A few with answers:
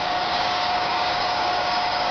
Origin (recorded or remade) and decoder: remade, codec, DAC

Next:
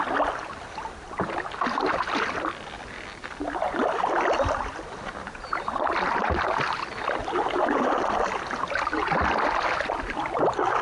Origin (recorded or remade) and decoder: recorded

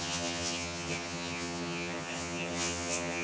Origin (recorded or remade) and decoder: remade, vocoder, HiFi-GAN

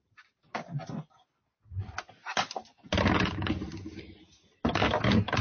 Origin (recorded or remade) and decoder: recorded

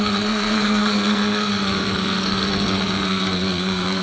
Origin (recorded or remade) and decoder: remade, codec, SNAC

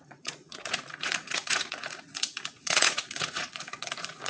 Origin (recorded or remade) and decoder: remade, vocoder, Vocos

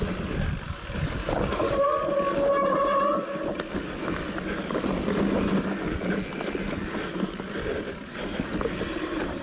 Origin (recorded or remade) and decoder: recorded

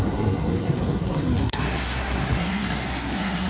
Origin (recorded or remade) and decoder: remade, codec, SNAC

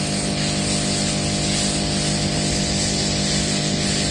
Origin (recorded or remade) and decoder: recorded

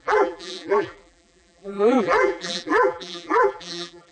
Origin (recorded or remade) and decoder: remade, vocoder, BigVGAN v2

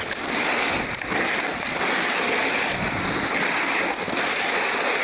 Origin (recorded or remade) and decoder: recorded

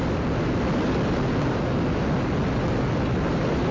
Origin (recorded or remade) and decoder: recorded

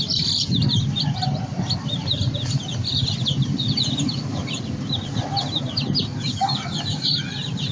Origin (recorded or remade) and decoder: remade, vocoder, BigVGAN v2